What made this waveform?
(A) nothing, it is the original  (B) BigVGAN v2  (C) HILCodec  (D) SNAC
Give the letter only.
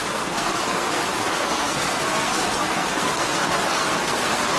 D